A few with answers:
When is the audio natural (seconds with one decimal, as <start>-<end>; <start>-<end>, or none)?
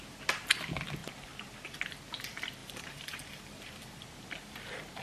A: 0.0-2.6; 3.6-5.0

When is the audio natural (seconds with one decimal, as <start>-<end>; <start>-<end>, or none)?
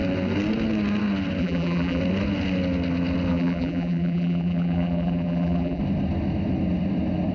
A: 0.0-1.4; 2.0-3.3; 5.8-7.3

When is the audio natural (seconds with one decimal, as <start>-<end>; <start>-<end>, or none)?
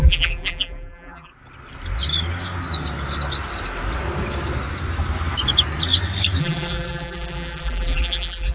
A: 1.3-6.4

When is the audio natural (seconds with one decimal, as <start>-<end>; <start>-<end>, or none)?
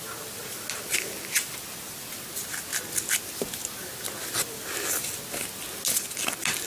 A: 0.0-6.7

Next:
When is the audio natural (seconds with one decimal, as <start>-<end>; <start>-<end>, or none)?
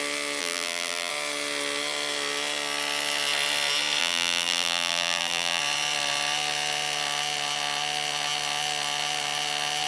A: 0.0-0.4; 1.1-4.0; 5.6-9.9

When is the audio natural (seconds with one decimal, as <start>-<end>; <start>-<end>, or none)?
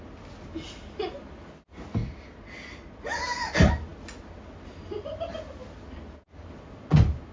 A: 0.0-7.3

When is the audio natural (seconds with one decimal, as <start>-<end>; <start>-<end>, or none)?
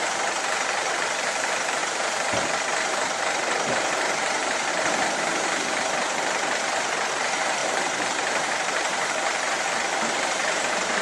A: 1.8-2.6; 4.7-7.1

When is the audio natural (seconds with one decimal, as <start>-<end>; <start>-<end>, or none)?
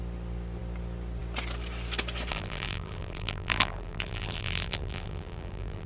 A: 0.0-2.3